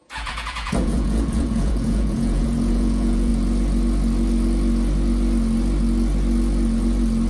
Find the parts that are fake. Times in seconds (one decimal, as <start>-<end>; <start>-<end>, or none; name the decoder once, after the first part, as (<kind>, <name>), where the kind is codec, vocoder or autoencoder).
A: 0.0-3.3 (vocoder, Vocos)